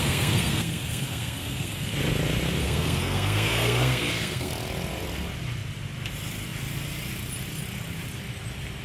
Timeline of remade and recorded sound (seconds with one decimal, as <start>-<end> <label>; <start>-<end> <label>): 0.0-1.9 remade; 1.9-2.6 recorded; 2.6-4.5 remade; 4.5-8.8 recorded